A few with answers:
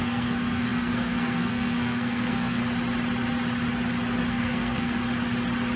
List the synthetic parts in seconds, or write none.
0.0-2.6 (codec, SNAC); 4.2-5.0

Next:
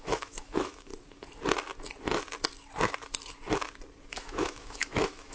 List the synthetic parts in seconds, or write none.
0.0-0.9 (autoencoder, DAC-VAE); 4.1-5.3